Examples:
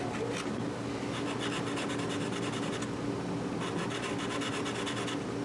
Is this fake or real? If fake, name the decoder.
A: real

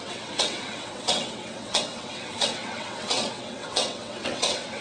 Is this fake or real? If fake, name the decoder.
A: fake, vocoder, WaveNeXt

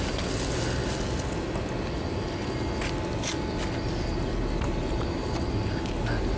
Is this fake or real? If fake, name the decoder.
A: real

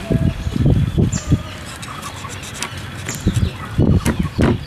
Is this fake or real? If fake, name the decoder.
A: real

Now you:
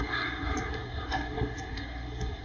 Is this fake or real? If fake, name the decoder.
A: fake, codec, SNAC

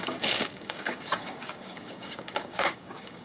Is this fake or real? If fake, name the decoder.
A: fake, codec, DAC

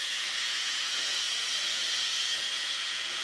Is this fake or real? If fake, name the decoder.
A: fake, vocoder, Vocos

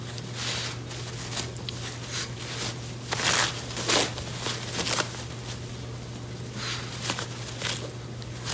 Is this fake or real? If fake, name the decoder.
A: real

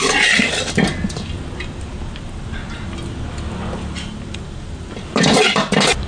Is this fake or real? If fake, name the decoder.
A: real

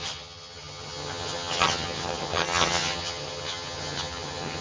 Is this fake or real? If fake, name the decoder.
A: fake, vocoder, HiFi-GAN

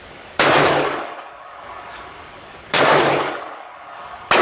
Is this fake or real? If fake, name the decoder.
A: fake, codec, DAC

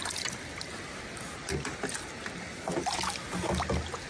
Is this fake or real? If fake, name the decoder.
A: real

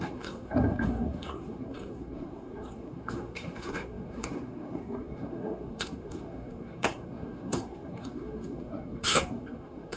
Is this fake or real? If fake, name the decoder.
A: fake, codec, SNAC